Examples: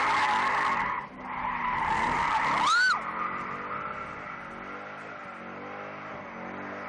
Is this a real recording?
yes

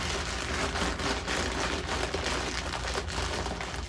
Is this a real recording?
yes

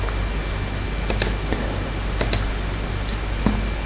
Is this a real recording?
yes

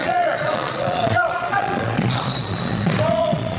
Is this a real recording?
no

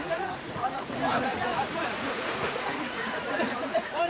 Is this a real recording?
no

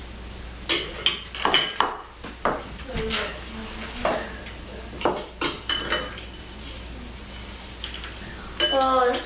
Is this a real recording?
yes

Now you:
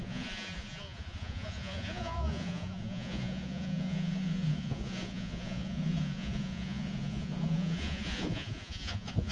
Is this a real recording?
no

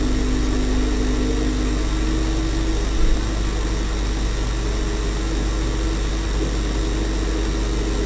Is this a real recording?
yes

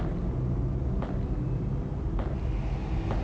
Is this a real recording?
yes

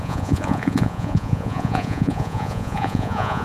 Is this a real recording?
no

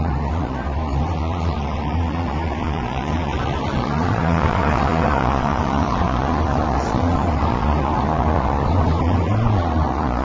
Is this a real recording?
no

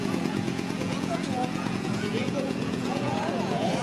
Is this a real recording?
no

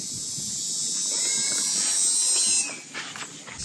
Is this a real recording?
yes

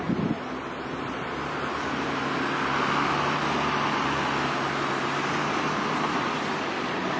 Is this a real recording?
yes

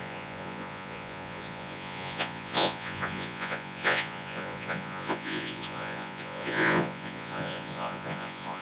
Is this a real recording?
no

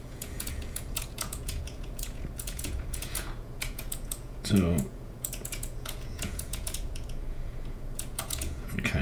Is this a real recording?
no